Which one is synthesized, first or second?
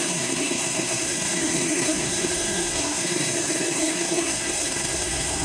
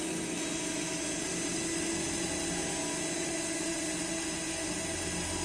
first